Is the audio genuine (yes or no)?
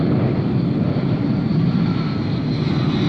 yes